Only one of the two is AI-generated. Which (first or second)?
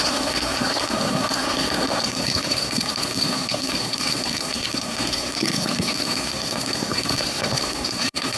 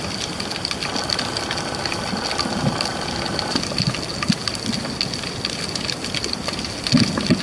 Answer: first